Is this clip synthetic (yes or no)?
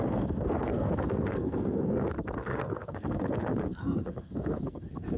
yes